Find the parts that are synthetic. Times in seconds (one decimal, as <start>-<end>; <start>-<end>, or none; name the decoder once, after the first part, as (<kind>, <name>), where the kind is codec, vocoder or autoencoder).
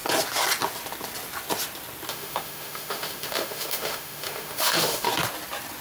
2.1-5.1 (autoencoder, DAC-VAE)